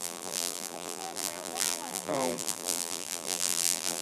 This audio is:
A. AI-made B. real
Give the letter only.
A